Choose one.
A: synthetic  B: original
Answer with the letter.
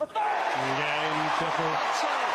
A